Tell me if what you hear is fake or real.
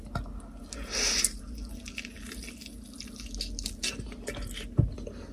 real